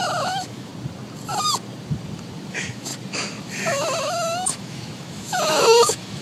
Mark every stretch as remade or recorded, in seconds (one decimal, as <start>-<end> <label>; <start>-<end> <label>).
0.0-0.7 remade; 0.7-2.5 recorded; 2.5-2.9 remade; 2.9-4.0 recorded; 4.0-6.2 remade